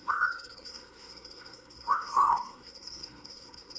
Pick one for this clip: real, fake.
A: fake